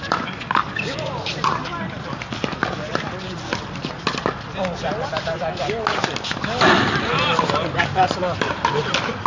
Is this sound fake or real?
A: real